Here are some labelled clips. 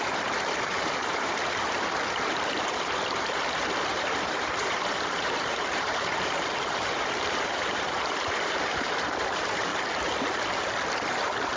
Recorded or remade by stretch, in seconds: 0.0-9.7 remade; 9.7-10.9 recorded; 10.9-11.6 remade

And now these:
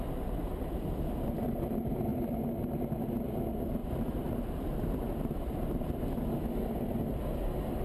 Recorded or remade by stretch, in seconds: 0.0-3.8 recorded; 3.8-6.0 remade; 6.0-7.8 recorded

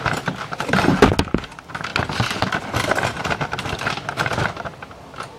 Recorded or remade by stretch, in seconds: 0.0-5.4 recorded

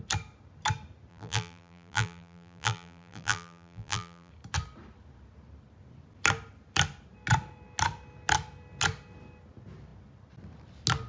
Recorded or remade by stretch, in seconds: 0.0-1.1 recorded; 1.1-4.3 remade; 4.3-11.1 recorded

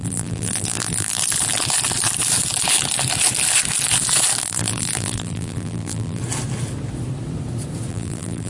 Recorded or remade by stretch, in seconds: 0.0-1.2 remade; 1.2-4.4 recorded; 4.4-6.2 remade; 6.2-7.9 recorded; 7.9-8.5 remade

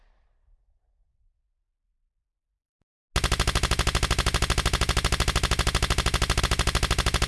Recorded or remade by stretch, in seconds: 0.0-7.3 recorded

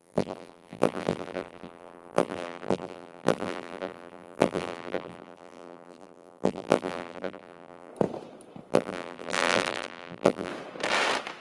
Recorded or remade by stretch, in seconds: 0.0-7.9 remade; 7.9-8.7 recorded; 8.7-10.5 remade; 10.5-11.4 recorded

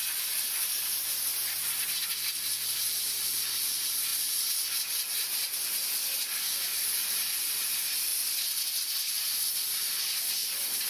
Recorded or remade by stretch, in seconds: 0.0-10.4 recorded; 10.4-10.9 remade